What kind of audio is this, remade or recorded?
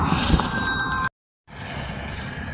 recorded